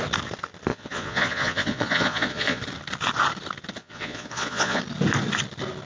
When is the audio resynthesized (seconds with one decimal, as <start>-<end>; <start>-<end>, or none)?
0.7-2.6; 3.8-4.8